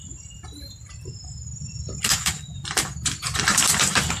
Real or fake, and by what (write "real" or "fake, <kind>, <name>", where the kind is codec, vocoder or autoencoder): fake, vocoder, BigVGAN v2